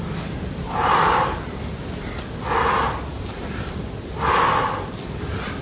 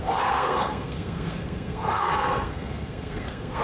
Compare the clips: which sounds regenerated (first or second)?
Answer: second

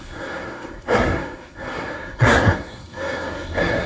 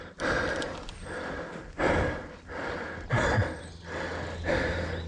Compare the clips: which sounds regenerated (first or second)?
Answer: first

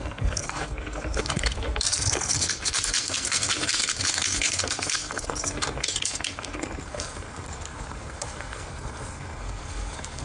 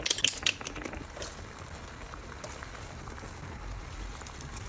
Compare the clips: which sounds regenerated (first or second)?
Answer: first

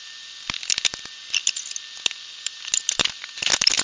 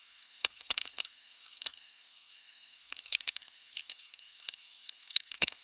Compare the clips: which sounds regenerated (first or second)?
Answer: second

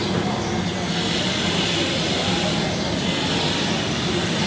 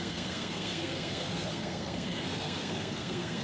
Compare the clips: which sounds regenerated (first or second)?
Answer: second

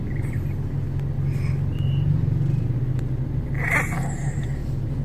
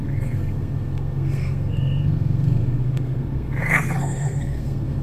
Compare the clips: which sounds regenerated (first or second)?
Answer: second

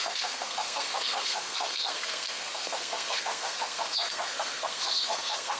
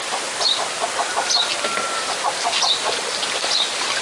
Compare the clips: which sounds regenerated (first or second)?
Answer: first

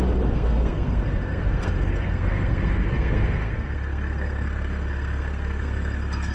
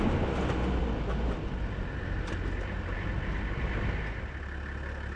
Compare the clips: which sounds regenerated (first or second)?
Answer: first